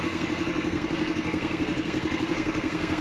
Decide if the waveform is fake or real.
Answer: fake